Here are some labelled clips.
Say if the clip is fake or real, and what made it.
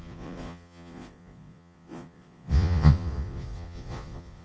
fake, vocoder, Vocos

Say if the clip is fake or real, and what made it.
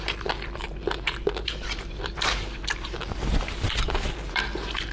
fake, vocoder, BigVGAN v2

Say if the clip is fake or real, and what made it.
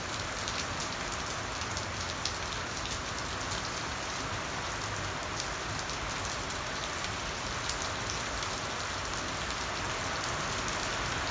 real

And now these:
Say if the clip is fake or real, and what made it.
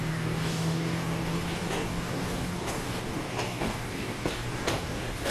fake, codec, DAC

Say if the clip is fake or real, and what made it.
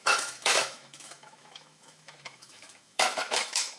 fake, autoencoder, DAC-VAE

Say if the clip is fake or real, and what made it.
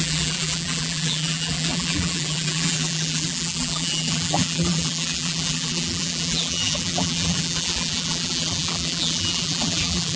fake, vocoder, BigVGAN v2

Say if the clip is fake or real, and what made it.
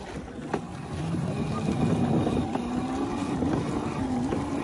real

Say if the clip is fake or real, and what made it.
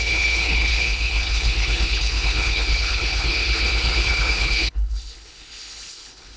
fake, codec, HILCodec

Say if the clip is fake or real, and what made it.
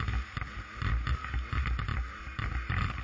real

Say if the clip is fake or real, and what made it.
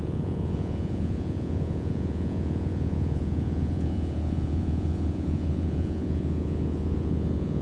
fake, vocoder, Vocos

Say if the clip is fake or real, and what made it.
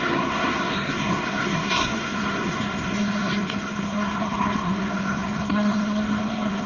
fake, codec, SNAC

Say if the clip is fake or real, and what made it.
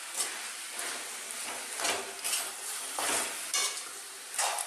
real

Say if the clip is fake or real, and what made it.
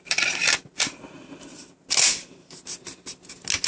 real